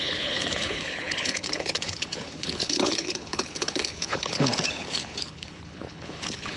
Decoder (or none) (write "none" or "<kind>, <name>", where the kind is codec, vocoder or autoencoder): codec, HILCodec